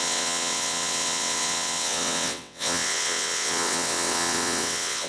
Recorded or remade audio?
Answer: remade